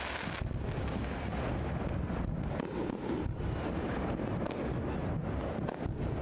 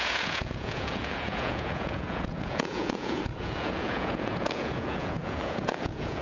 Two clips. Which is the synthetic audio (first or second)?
second